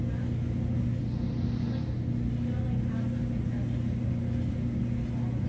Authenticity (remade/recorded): recorded